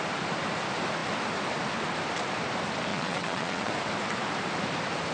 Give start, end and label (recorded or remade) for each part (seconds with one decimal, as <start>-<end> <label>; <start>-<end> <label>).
0.0-2.9 recorded; 2.9-3.7 remade; 3.7-5.1 recorded